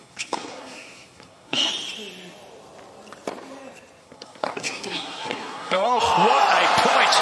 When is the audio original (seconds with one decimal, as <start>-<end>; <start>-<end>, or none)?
1.7-4.0; 6.0-7.2